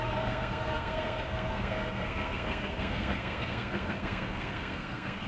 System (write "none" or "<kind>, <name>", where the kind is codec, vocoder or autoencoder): codec, SNAC